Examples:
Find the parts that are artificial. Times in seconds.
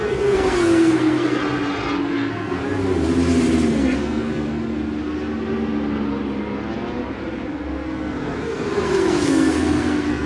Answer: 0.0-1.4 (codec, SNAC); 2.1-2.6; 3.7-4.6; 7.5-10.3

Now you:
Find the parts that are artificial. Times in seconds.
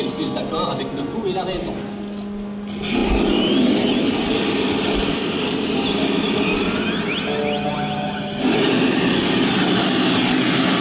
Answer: none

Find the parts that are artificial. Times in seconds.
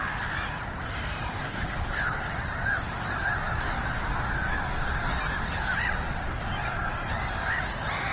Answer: 1.4-2.3 (codec, HILCodec)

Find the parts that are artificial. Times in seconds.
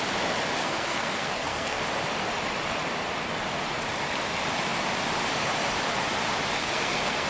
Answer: 0.6-1.8 (codec, SNAC); 6.6-7.3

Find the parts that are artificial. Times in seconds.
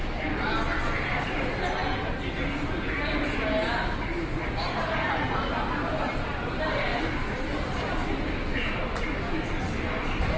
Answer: 0.0-0.6 (vocoder, BigVGAN v2)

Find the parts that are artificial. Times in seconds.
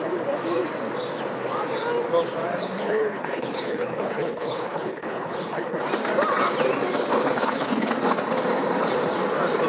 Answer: 2.5-5.8 (codec, HILCodec); 7.1-7.9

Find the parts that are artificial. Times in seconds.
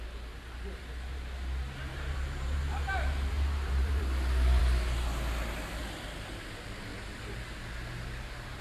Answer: 1.9-4.0 (vocoder, BigVGAN v2); 6.9-7.6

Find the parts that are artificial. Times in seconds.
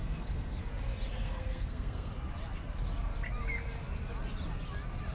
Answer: 0.0-0.6 (codec, SNAC); 1.1-2.1